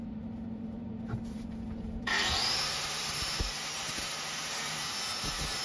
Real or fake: fake